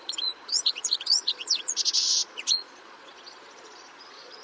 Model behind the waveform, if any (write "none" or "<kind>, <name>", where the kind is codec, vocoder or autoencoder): vocoder, Vocos